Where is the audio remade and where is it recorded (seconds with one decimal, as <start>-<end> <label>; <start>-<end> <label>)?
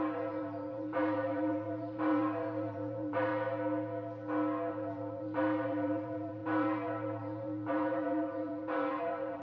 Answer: 0.0-3.3 remade; 3.3-4.7 recorded; 4.7-9.4 remade